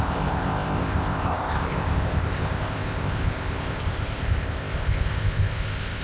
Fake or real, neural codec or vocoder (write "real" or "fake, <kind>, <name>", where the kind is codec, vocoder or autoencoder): fake, codec, ZipCodec